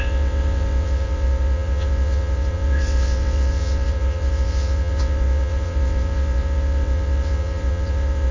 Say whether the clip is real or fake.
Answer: fake